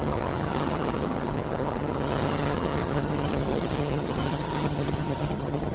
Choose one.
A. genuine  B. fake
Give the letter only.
B